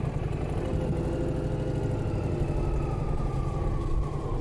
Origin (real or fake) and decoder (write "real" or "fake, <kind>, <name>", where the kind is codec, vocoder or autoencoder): real